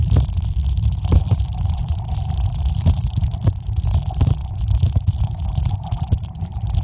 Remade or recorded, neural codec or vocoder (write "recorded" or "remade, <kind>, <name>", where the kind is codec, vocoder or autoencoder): remade, vocoder, BigVGAN v2